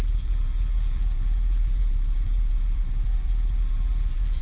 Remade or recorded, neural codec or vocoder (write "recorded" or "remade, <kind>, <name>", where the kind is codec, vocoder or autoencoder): remade, vocoder, BigVGAN v2